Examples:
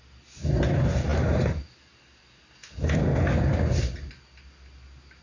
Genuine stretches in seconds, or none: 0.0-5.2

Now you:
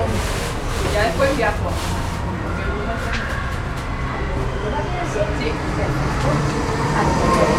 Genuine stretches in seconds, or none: none

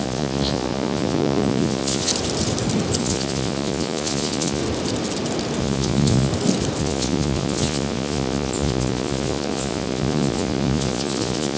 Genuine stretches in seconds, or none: 2.1-3.0; 4.6-5.6; 6.3-6.8

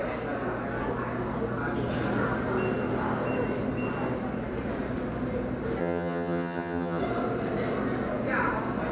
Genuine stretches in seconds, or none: 0.0-5.8; 7.0-8.9